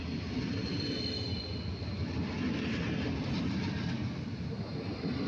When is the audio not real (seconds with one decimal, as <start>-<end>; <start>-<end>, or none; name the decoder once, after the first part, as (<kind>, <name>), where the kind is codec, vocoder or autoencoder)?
none